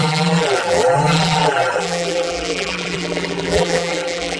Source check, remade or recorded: remade